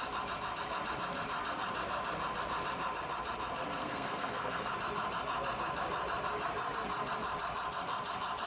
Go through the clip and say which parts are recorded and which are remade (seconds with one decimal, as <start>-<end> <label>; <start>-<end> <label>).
0.0-3.8 recorded; 3.8-4.7 remade; 4.7-8.5 recorded